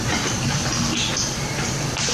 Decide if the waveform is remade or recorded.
recorded